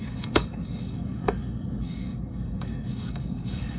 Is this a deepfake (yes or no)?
yes